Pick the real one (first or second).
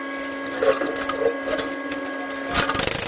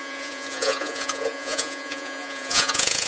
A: first